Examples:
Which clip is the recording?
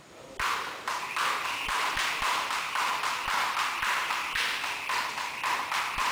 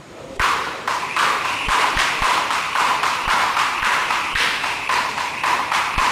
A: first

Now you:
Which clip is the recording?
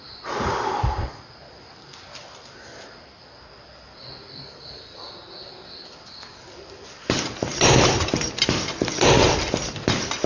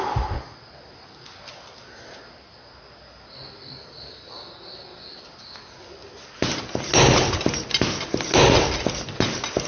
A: second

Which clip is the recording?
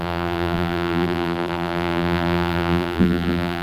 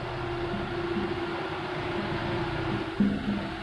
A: second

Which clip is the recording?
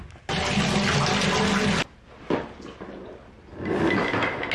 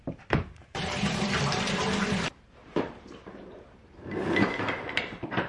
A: first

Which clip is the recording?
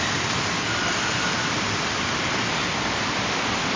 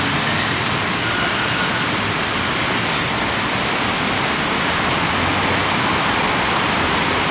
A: second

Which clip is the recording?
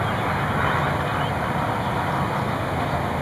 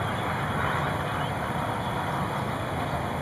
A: first